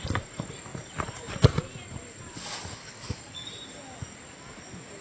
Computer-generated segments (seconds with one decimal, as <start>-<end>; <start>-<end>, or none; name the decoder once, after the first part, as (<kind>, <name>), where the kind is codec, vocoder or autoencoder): 2.8-3.5 (codec, DAC)